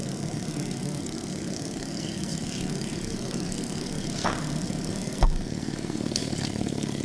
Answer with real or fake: fake